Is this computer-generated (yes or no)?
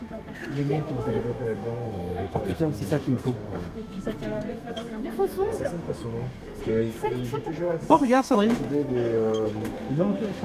yes